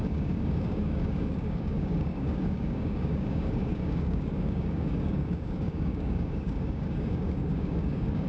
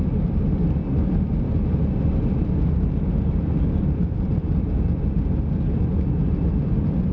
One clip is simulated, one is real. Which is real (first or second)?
second